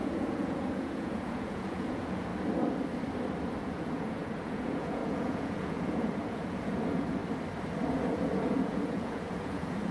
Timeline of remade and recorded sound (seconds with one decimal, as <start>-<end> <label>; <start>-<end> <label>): 0.0-2.3 remade; 2.3-3.6 recorded; 3.6-7.2 remade; 7.2-7.9 recorded; 7.9-9.9 remade